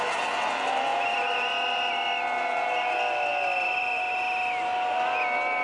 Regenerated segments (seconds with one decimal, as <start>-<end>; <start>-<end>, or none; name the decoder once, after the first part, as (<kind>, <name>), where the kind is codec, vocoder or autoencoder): none